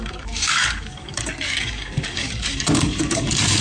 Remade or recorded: remade